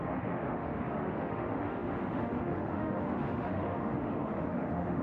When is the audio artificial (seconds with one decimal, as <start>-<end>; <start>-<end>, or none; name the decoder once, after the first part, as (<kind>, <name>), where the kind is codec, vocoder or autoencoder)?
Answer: 0.0-5.0 (autoencoder, DAC-VAE)